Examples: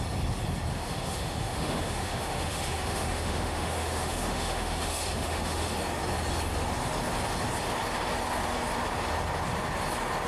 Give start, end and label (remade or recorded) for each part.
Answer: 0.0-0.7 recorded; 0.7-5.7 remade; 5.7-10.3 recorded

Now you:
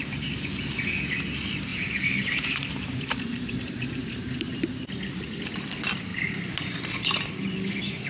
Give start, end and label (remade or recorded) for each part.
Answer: 0.0-1.7 recorded; 1.7-4.8 remade; 4.8-6.1 recorded; 6.1-6.8 remade; 6.8-8.1 recorded

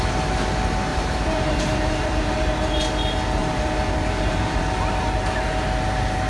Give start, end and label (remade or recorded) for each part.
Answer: 0.0-0.9 recorded; 0.9-2.8 remade; 2.8-3.4 recorded; 3.4-4.6 remade; 4.6-6.3 recorded

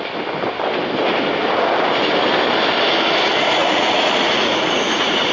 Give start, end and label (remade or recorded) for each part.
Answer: 0.0-3.6 recorded; 3.6-5.3 remade

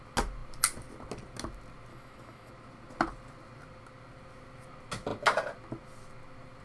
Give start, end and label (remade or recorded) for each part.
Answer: 0.0-1.9 recorded; 1.9-2.5 remade; 2.5-6.6 recorded

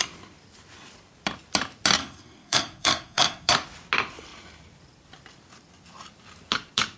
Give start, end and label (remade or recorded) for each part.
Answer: 0.0-2.0 recorded; 2.0-3.5 remade; 3.5-7.0 recorded

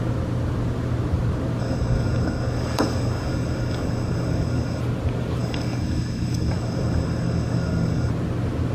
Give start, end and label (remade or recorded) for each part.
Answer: 0.0-1.6 recorded; 1.6-4.8 remade; 4.8-5.4 recorded; 5.4-8.1 remade; 8.1-8.7 recorded